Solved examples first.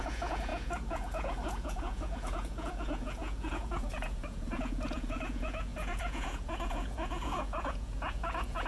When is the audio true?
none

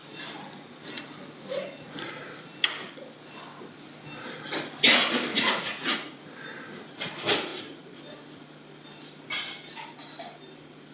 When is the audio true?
0.0-5.3; 6.2-10.9

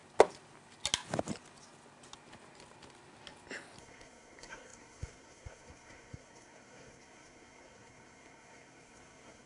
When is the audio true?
0.0-3.8

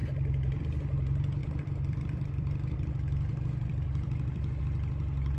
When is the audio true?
0.6-1.4; 4.6-5.4

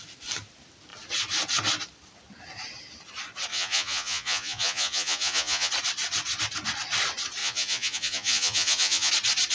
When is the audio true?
0.0-3.5; 5.7-7.4; 9.1-9.5